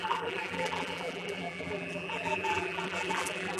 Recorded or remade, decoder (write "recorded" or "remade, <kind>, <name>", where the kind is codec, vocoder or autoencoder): remade, vocoder, BigVGAN v2